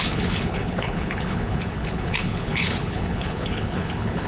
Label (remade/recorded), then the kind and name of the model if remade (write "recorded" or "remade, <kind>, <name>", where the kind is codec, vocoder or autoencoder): remade, codec, HILCodec